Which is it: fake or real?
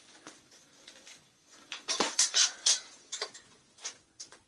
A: fake